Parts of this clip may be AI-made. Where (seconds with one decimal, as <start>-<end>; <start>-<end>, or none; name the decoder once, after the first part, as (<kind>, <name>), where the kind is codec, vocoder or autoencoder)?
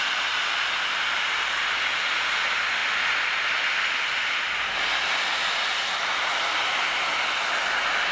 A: none